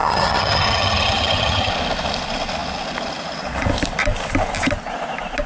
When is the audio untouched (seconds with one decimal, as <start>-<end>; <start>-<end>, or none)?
1.7-5.5